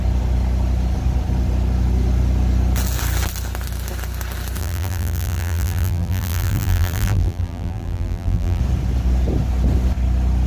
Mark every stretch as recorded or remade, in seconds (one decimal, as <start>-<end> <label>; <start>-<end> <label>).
0.0-4.6 recorded; 4.6-8.6 remade; 8.6-10.5 recorded